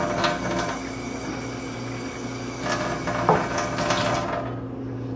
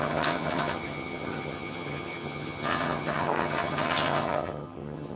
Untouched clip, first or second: first